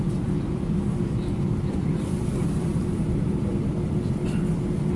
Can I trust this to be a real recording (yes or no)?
no